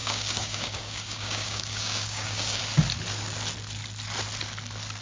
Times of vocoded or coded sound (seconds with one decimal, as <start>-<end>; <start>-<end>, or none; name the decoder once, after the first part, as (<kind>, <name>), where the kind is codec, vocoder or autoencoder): 0.0-2.6 (codec, DAC)

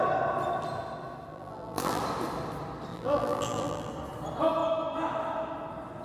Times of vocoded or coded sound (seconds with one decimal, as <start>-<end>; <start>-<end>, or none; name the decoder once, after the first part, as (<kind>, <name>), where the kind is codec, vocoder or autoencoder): 1.3-2.0 (vocoder, BigVGAN v2); 2.9-3.9

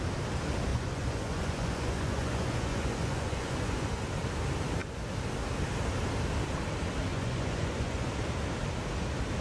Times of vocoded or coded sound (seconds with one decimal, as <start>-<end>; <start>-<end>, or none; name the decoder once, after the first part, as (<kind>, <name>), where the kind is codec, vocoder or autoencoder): 0.7-4.0 (vocoder, Vocos); 7.1-8.1